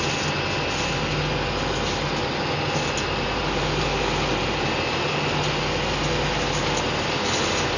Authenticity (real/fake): real